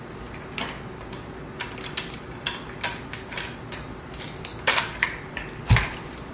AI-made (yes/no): no